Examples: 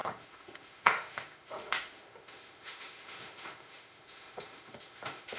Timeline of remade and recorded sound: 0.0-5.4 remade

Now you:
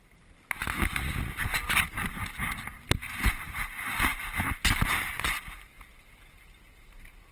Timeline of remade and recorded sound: 0.0-7.3 recorded

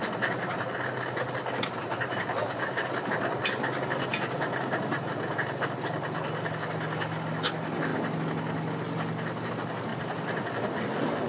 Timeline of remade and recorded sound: 0.0-4.1 recorded; 4.1-4.7 remade; 4.7-9.9 recorded; 9.9-10.8 remade; 10.8-11.3 recorded

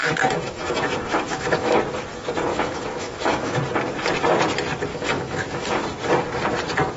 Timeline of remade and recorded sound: 0.0-1.8 remade; 1.8-2.5 recorded; 2.5-3.6 remade; 3.6-4.9 recorded; 4.9-5.8 remade; 5.8-7.0 recorded

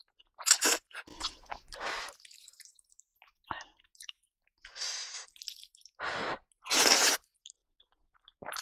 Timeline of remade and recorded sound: 0.0-8.6 recorded

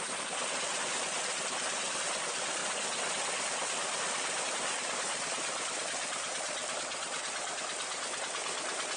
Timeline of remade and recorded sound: 0.0-9.0 recorded

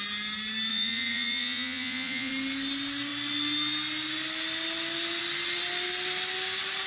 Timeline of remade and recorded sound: 0.0-0.7 recorded; 0.7-2.3 remade; 2.3-6.9 recorded

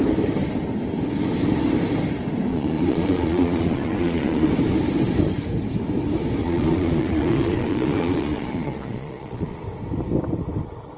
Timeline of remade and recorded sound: 0.0-2.5 recorded; 2.5-4.5 remade; 4.5-6.4 recorded; 6.4-9.6 remade; 9.6-11.0 recorded